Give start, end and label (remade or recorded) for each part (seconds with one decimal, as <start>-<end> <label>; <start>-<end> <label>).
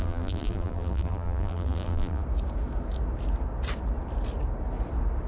0.0-2.2 remade; 2.2-5.3 recorded